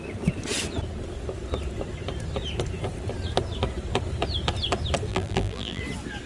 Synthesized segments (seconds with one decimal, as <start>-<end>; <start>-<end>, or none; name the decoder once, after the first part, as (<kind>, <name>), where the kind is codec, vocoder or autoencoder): 5.1-5.8 (vocoder, BigVGAN v2)